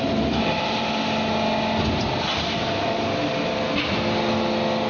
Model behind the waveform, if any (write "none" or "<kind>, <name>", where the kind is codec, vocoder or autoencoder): none